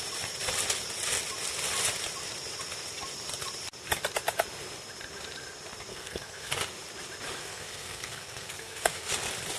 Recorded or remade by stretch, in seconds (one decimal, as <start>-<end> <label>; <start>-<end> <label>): 0.0-5.9 recorded; 5.9-6.5 remade; 6.5-7.4 recorded; 7.4-9.1 remade; 9.1-9.6 recorded